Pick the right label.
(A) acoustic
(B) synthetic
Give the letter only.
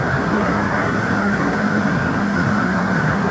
B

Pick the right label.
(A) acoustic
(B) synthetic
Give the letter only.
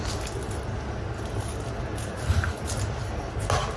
A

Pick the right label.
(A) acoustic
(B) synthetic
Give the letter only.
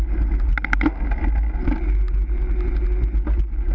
A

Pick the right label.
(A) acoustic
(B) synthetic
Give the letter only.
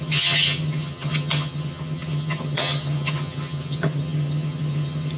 B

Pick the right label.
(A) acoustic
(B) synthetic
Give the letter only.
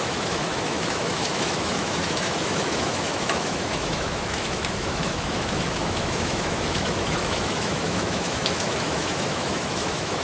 B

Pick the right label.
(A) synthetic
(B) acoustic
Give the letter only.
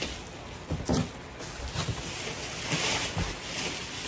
B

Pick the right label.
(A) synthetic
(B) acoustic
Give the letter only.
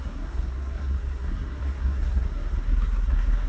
A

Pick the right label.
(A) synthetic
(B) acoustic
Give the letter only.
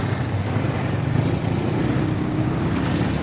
B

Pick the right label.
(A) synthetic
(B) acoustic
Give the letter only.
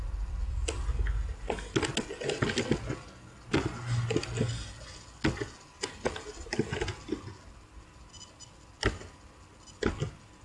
B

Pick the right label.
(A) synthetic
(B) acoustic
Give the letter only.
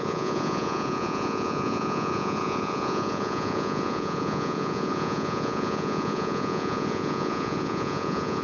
A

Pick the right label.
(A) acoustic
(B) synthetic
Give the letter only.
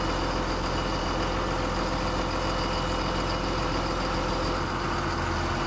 A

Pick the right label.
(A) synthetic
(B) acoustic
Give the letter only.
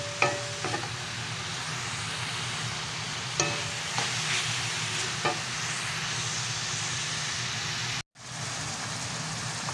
B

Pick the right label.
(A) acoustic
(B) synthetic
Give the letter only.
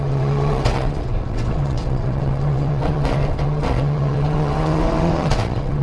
B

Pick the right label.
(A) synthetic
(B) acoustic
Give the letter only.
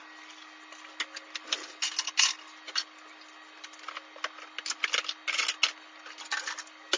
B